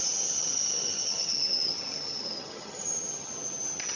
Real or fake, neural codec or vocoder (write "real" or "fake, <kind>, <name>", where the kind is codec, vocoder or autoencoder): fake, vocoder, HiFi-GAN